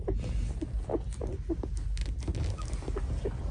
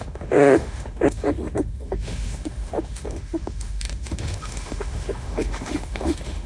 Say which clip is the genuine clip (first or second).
first